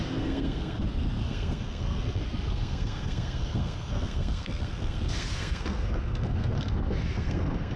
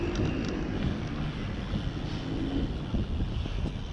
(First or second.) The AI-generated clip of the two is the first